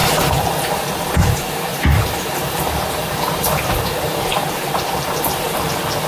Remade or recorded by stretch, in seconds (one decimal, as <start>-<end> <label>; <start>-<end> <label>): 0.0-3.7 remade; 3.7-4.4 recorded; 4.4-5.4 remade; 5.4-6.1 recorded